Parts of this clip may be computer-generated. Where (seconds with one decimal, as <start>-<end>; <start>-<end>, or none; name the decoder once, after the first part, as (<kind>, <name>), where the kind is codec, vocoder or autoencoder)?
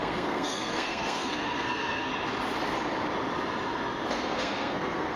0.0-2.1 (codec, SNAC); 4.1-5.2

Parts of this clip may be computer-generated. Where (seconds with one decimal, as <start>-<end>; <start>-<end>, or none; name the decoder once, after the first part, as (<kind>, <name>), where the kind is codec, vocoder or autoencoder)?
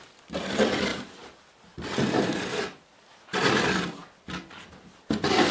none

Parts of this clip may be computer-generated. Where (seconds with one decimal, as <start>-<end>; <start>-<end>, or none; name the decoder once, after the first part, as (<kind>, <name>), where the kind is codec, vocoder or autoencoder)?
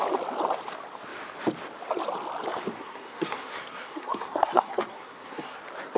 2.8-5.6 (codec, SNAC)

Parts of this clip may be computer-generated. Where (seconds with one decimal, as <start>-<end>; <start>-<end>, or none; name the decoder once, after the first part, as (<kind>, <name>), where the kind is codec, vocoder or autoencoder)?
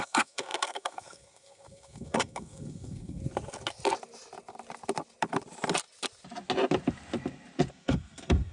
0.0-3.2 (codec, SNAC); 7.7-8.5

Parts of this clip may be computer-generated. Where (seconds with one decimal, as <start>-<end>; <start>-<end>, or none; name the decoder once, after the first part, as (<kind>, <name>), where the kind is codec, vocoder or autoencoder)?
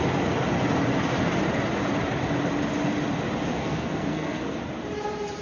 3.5-4.6 (codec, SNAC)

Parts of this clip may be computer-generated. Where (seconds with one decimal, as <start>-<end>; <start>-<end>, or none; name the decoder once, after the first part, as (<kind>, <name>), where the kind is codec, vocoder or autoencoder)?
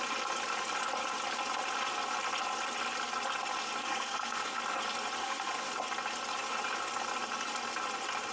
3.8-4.6 (codec, SNAC); 5.2-5.7